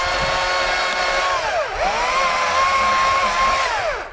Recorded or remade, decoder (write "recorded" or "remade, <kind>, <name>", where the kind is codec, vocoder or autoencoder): recorded